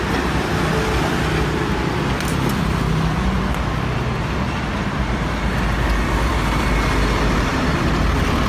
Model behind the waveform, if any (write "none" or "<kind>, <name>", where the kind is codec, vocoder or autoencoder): none